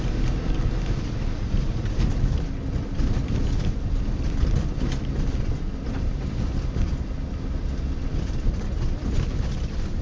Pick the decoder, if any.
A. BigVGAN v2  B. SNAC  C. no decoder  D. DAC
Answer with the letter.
C